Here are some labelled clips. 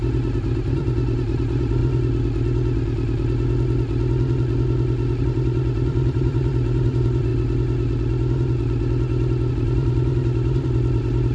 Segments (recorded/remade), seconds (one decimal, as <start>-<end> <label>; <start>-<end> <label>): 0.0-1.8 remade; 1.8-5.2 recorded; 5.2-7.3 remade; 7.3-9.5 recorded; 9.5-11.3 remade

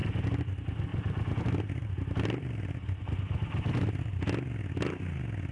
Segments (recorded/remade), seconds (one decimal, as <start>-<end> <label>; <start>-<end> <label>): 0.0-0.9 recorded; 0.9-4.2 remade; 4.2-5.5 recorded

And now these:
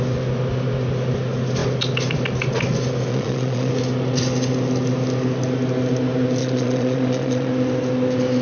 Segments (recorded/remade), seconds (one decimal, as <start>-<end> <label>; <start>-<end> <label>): 0.0-3.1 recorded; 3.1-3.7 remade; 3.7-6.4 recorded; 6.4-7.5 remade; 7.5-8.4 recorded